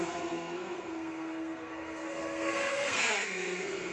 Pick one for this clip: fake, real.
fake